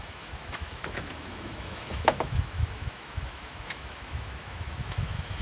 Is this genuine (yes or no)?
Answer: no